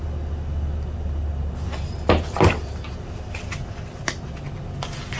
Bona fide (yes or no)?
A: yes